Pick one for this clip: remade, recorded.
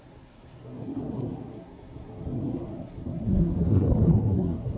remade